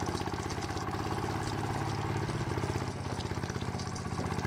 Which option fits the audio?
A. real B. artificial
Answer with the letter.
A